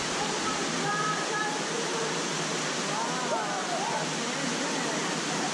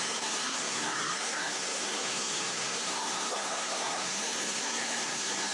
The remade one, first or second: second